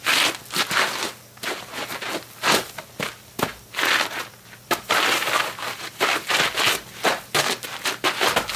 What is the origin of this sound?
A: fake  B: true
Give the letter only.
B